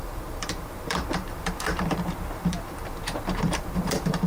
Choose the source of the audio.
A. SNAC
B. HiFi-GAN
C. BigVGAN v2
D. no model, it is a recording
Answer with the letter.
C